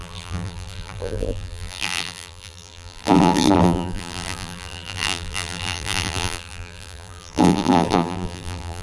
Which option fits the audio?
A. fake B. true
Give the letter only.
A